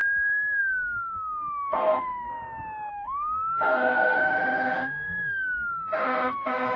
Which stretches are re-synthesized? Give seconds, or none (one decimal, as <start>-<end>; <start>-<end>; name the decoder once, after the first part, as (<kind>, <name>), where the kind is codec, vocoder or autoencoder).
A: 0.6-2.3 (autoencoder, DAC-VAE); 2.9-6.8